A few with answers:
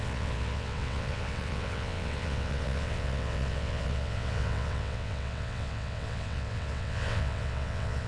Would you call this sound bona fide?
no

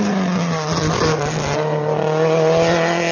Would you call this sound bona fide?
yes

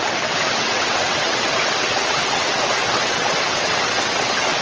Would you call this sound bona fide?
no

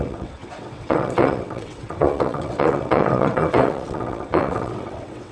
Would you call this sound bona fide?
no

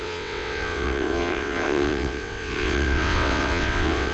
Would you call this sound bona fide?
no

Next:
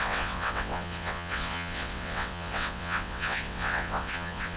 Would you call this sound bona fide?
no